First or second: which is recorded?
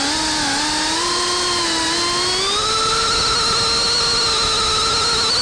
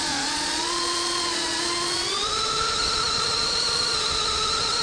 first